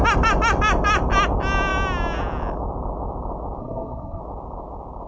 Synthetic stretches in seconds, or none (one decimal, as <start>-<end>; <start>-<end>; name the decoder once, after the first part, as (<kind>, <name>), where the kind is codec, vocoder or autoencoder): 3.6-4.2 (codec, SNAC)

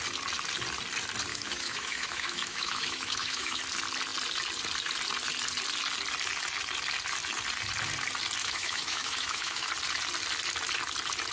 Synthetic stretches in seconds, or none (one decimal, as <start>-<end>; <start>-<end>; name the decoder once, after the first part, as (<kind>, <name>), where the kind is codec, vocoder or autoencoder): 1.3-3.6 (autoencoder, DAC-VAE); 8.4-9.7

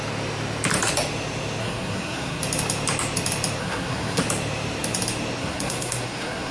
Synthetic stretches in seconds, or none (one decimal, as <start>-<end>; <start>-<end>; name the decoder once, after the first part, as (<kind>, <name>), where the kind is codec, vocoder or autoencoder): 1.6-2.4 (codec, SNAC); 3.6-4.2; 5.4-6.5

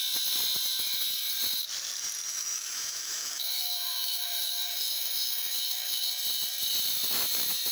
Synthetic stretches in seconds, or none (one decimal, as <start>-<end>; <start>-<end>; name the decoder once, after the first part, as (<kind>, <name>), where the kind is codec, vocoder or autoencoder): 2.3-6.1 (autoencoder, DAC-VAE)

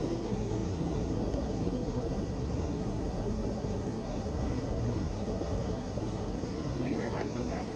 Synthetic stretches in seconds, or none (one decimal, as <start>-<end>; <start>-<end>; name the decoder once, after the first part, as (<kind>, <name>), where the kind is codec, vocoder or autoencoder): 0.0-7.8 (codec, SNAC)

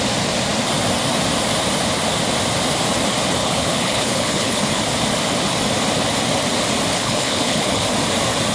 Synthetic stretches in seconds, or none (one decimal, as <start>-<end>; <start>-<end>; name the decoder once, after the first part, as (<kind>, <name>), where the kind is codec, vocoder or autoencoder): 3.4-4.8 (codec, HILCodec); 6.9-7.8

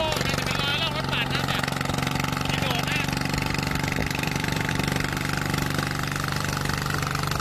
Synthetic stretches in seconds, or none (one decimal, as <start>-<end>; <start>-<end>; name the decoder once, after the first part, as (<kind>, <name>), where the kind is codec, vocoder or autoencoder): 4.0-4.7 (vocoder, BigVGAN v2)

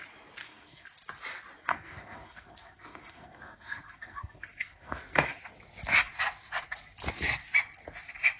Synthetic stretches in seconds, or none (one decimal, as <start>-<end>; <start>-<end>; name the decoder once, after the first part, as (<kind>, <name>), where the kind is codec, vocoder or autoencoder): 0.4-0.9 (codec, SNAC); 1.6-5.4